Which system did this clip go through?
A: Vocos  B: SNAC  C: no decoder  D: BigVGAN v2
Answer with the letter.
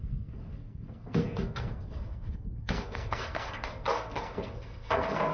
B